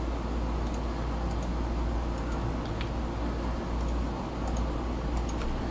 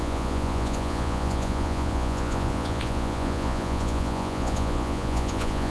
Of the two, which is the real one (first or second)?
first